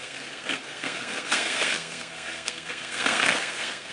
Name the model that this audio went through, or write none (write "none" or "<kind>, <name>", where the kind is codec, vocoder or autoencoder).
codec, SNAC